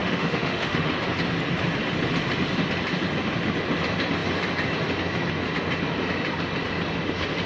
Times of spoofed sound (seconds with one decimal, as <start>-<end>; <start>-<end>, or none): 0.0-0.9